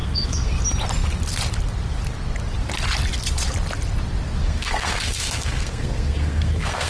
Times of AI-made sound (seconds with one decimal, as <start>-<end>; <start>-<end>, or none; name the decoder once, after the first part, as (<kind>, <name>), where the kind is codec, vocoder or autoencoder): 0.0-0.6 (codec, SNAC); 4.4-6.9